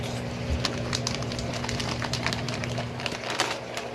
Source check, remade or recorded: recorded